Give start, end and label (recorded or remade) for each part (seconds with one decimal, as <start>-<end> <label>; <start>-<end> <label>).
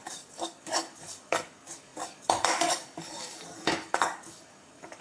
0.0-5.0 remade